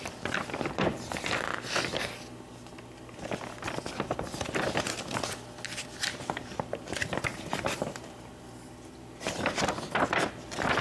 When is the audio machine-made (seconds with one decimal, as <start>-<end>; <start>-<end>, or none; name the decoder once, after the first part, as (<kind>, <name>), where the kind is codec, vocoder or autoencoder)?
7.3-8.3 (vocoder, BigVGAN v2)